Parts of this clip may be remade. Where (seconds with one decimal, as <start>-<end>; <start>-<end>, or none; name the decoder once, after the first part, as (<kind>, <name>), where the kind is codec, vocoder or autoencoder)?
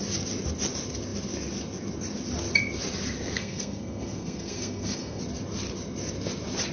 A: 3.4-5.2 (codec, SNAC)